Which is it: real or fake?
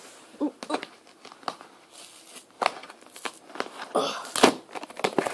real